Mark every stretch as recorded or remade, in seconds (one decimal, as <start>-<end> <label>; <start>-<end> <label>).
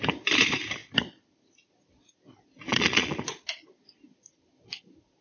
0.0-2.7 recorded; 2.7-3.2 remade; 3.2-5.2 recorded